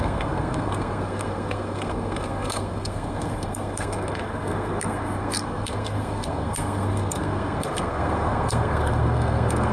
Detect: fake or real fake